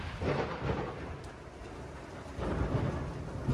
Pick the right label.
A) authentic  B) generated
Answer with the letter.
A